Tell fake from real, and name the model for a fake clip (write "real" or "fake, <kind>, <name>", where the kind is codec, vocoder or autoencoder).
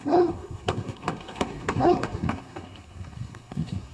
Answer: fake, codec, SNAC